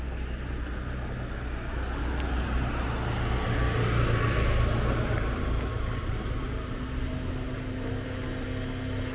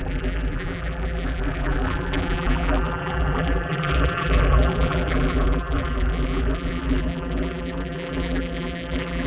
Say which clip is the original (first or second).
first